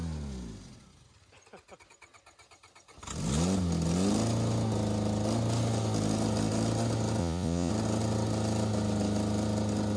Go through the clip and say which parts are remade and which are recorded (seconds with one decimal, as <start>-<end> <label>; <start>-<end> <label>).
0.0-7.2 recorded; 7.2-7.7 remade; 7.7-10.0 recorded